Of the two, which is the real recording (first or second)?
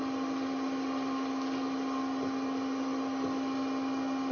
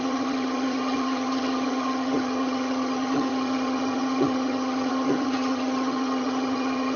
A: first